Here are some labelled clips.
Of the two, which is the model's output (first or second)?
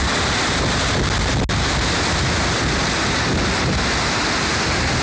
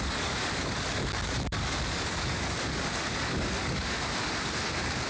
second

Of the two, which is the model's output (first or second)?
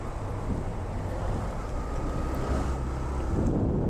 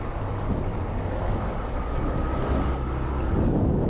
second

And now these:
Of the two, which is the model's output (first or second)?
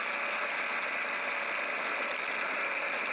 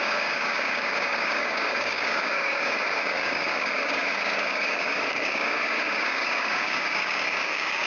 second